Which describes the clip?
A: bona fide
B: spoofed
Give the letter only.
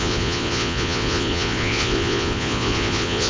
B